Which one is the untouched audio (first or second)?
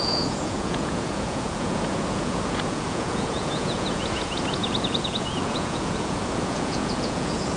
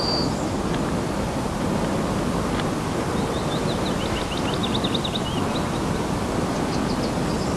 second